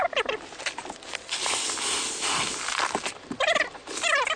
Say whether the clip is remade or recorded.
recorded